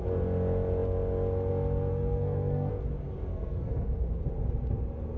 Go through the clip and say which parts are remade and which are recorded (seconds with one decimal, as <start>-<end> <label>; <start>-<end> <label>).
0.0-1.9 recorded; 1.9-2.7 remade; 2.7-3.3 recorded; 3.3-4.2 remade; 4.2-5.2 recorded